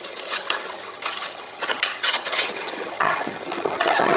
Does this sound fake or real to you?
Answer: fake